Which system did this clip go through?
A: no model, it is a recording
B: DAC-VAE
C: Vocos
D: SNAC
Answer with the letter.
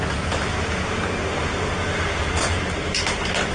A